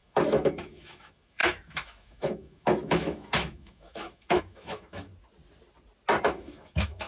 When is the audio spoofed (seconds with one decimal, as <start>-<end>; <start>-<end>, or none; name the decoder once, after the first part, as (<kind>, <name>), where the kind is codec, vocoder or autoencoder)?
0.0-5.1 (autoencoder, DAC-VAE); 6.2-7.1